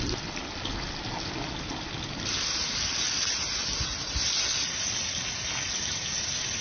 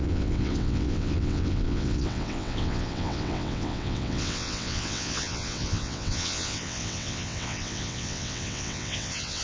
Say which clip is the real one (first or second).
first